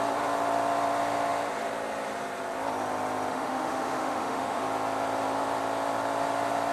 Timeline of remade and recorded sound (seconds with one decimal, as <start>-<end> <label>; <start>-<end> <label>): 0.0-3.3 recorded; 3.3-4.6 remade; 4.6-6.7 recorded